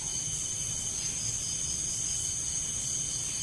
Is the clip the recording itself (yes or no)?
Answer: yes